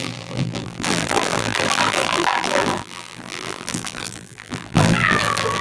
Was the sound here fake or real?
fake